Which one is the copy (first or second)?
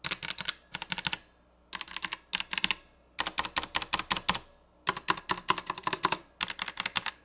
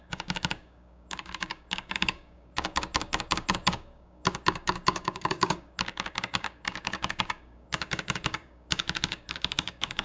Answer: second